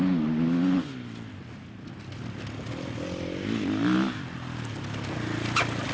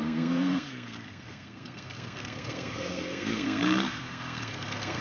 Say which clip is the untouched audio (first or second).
first